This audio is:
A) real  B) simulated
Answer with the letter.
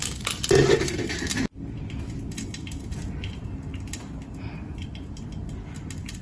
A